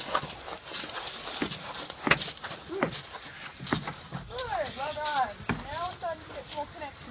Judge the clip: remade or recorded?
recorded